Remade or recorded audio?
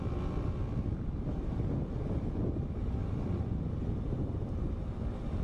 recorded